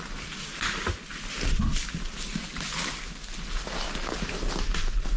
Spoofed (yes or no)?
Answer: no